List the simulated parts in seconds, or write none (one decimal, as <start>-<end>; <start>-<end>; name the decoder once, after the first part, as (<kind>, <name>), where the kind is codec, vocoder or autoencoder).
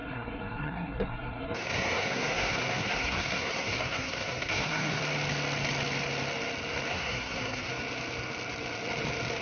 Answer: 0.0-5.0 (codec, SNAC); 6.9-7.7